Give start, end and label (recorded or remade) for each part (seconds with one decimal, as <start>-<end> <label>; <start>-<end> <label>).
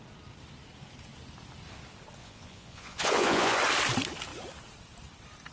0.0-2.2 recorded; 2.2-3.6 remade; 3.6-5.5 recorded